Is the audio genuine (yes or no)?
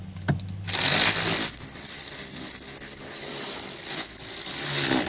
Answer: yes